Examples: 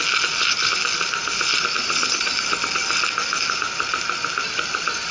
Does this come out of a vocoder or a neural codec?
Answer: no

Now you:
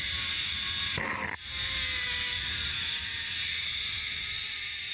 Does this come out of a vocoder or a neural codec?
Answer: no